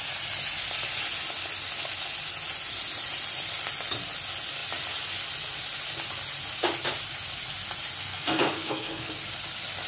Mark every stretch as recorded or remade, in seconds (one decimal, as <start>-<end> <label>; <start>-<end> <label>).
0.0-8.1 recorded; 8.1-9.1 remade; 9.1-9.9 recorded